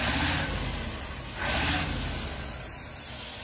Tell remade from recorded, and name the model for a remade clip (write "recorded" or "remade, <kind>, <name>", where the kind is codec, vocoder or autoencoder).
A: recorded